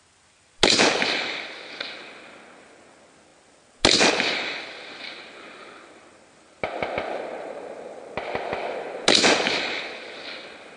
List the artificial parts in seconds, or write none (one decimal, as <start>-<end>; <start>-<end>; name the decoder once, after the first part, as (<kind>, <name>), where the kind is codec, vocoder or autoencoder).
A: none